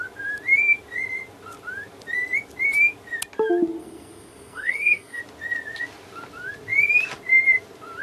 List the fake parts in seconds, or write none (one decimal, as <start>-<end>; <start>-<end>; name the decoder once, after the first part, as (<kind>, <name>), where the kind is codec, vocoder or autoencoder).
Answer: 3.8-5.2 (codec, SNAC)